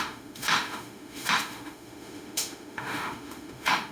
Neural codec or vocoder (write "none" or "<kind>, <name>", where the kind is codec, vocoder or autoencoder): autoencoder, DAC-VAE